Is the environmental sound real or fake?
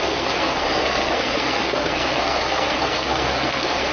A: fake